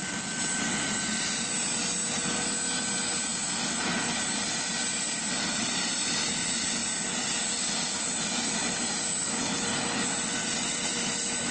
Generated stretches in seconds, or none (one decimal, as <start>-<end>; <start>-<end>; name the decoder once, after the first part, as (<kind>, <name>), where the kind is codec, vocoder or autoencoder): 10.4-10.9 (vocoder, WaveNeXt)